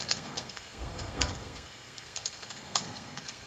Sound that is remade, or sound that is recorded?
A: remade